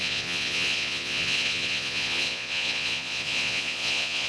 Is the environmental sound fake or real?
fake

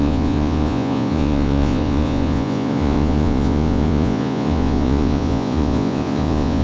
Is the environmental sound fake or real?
fake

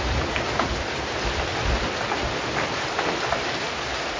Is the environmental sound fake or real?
real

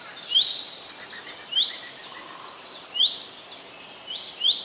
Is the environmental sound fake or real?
real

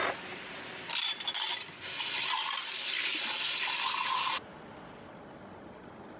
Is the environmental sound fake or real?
real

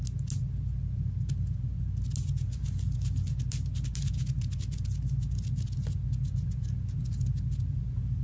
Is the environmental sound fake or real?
real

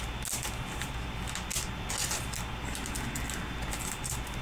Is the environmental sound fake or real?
real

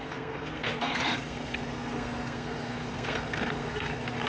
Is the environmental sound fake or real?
fake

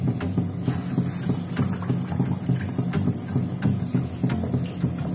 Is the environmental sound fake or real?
real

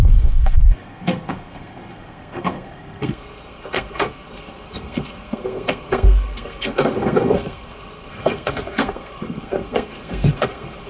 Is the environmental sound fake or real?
fake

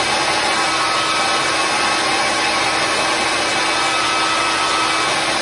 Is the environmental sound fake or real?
real